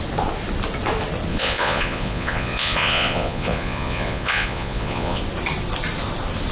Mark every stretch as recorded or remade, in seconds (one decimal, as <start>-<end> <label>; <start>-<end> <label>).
0.0-1.3 recorded; 1.3-5.2 remade; 5.2-6.5 recorded

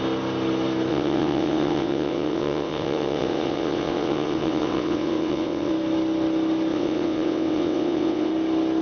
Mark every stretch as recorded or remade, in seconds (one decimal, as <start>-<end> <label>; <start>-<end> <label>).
0.0-0.9 recorded; 0.9-5.7 remade; 5.7-6.7 recorded; 6.7-8.3 remade; 8.3-8.8 recorded

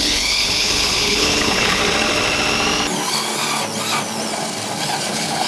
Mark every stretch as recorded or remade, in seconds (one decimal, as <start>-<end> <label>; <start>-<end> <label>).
0.0-1.8 remade; 1.8-5.1 recorded; 5.1-5.5 remade

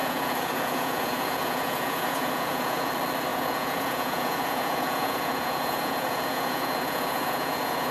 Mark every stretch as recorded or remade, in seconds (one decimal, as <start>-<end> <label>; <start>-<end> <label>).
0.0-2.9 remade; 2.9-3.3 recorded; 3.3-7.9 remade

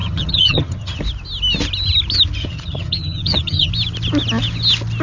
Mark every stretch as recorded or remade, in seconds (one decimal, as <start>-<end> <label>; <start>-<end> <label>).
0.0-1.0 remade; 1.0-2.4 recorded; 2.4-3.7 remade; 3.7-5.0 recorded

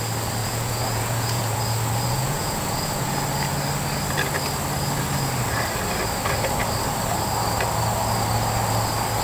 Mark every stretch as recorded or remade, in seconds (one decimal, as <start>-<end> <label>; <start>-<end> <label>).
0.0-0.4 recorded; 0.4-1.6 remade; 1.6-2.1 recorded; 2.1-3.1 remade; 3.1-9.2 recorded

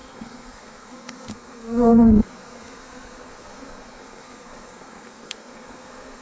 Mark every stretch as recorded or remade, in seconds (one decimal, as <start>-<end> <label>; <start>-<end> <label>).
0.0-6.2 remade